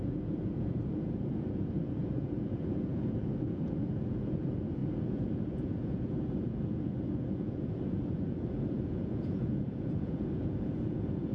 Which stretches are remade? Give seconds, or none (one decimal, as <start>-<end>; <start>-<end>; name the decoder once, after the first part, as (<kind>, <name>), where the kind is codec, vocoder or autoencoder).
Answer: 0.0-11.3 (vocoder, Vocos)